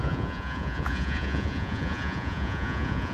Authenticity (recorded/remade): remade